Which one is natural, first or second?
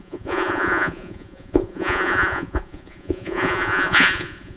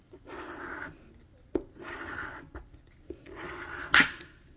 second